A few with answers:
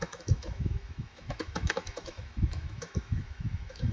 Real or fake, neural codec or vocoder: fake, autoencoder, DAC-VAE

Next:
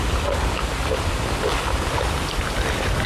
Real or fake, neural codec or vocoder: real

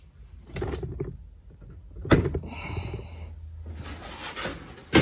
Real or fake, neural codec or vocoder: real